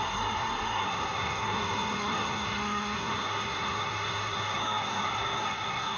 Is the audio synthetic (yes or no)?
yes